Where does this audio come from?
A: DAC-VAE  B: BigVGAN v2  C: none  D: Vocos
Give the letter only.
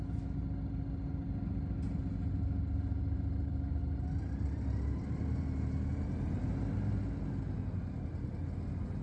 C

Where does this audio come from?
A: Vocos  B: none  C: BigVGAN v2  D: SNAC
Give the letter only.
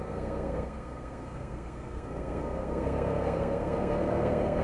D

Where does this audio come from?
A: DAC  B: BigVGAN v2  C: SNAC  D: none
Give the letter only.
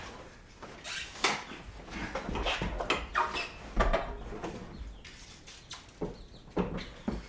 D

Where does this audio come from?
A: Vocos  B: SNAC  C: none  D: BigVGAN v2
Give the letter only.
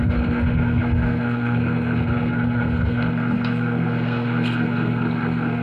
B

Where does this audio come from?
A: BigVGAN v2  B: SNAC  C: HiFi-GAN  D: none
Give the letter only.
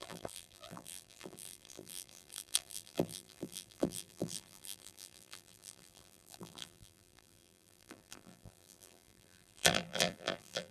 A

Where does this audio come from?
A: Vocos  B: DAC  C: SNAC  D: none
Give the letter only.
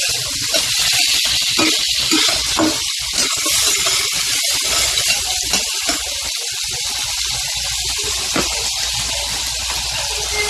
D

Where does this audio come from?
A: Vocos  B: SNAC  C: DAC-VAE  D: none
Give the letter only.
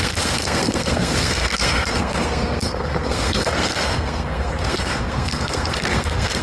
B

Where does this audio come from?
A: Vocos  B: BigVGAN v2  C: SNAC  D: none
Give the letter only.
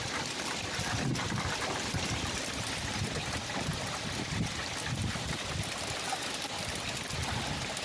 D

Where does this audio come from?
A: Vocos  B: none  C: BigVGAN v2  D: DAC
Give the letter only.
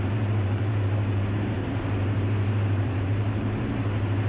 C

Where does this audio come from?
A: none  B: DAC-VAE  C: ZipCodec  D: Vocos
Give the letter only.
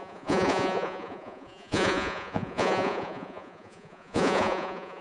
D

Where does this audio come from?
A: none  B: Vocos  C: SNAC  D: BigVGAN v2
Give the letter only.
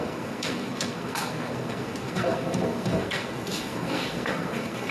C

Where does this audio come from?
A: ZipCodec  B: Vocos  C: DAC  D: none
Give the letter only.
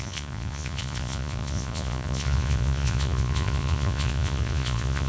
B